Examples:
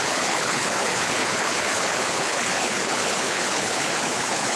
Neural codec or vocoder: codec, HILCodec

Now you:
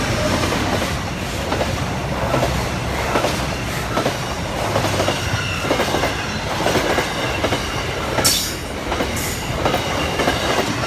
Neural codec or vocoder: none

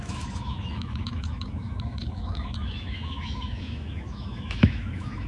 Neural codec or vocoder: autoencoder, DAC-VAE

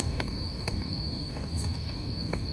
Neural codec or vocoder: codec, DAC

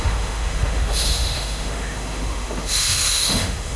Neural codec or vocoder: autoencoder, DAC-VAE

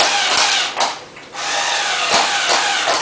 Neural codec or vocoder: none